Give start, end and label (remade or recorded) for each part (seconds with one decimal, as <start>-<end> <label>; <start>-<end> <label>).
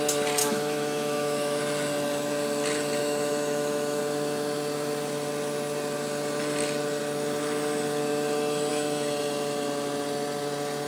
0.0-0.4 recorded; 0.4-1.6 remade; 1.6-3.0 recorded; 3.0-4.0 remade; 4.0-10.9 recorded